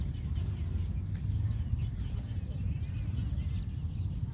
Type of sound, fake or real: real